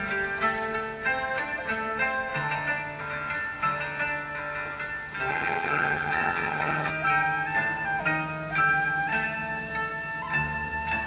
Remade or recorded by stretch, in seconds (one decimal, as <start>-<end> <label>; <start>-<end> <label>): 0.0-5.3 recorded; 5.3-6.9 remade; 6.9-11.1 recorded